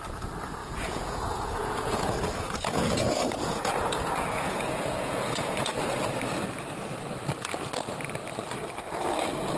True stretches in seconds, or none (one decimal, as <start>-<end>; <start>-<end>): 0.0-0.6; 5.7-9.6